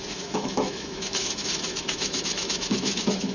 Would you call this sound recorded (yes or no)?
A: no